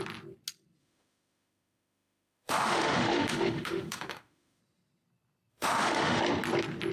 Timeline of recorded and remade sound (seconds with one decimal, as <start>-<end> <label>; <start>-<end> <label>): 0.0-0.8 recorded; 0.8-4.6 remade; 4.6-5.5 recorded; 5.5-6.2 remade; 6.2-6.9 recorded